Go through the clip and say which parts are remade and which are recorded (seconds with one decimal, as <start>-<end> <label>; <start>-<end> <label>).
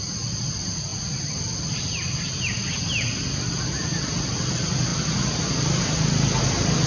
0.0-6.9 recorded